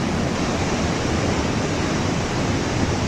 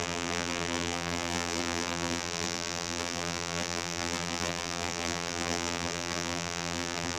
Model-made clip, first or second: second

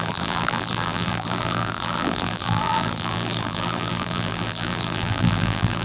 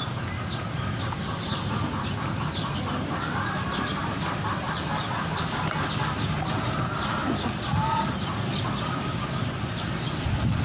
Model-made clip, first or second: first